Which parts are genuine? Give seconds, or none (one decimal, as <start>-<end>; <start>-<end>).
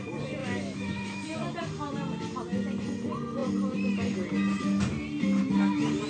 0.0-0.4; 1.5-6.1